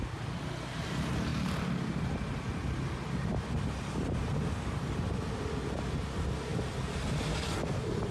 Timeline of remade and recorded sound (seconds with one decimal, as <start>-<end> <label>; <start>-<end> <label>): 0.0-8.1 recorded